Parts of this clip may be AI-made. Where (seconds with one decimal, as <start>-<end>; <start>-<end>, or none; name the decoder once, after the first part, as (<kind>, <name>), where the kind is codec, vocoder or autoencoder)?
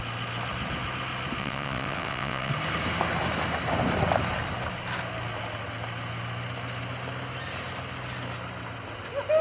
1.4-2.5 (vocoder, WaveNeXt)